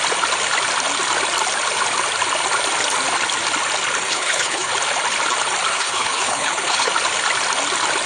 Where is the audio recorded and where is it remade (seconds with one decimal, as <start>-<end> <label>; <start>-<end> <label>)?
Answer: 0.0-4.1 recorded; 4.1-4.7 remade; 4.7-5.7 recorded; 5.7-6.9 remade; 6.9-8.1 recorded